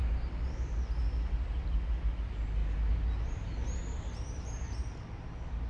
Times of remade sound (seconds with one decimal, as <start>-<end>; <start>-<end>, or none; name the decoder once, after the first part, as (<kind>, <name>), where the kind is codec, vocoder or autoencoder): none